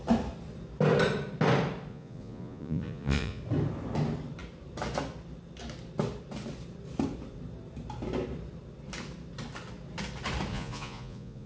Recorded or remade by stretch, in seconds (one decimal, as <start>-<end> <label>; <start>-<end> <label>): 0.0-1.9 recorded; 1.9-3.4 remade; 3.4-10.5 recorded; 10.5-11.5 remade